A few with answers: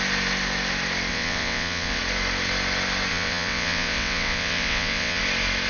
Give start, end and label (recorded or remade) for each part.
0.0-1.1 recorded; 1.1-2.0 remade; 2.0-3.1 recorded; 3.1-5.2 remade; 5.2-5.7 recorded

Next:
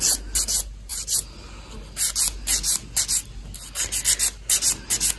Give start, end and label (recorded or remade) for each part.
0.0-5.2 recorded

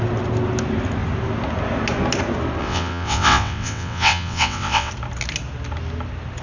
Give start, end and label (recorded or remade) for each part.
0.0-2.6 recorded; 2.6-4.9 remade; 4.9-6.4 recorded

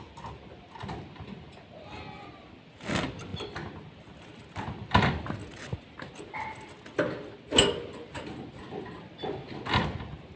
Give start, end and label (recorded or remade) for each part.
0.0-10.4 recorded

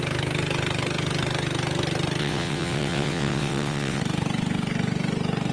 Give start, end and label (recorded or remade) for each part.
0.0-2.2 recorded; 2.2-4.0 remade; 4.0-5.5 recorded